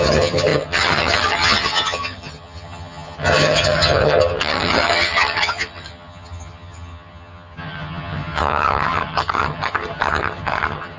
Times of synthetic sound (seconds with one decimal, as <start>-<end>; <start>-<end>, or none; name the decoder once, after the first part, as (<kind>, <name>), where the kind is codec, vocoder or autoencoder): 0.0-11.0 (vocoder, HiFi-GAN)